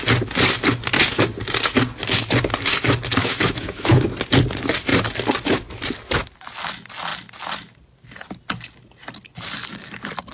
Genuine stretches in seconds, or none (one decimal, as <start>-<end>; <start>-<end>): 0.0-3.2; 4.0-10.3